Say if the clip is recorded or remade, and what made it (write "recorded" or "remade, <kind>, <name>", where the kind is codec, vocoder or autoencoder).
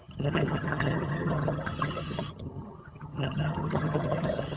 remade, vocoder, HiFi-GAN